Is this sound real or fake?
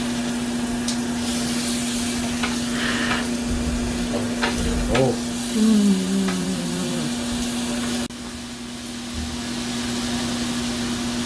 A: real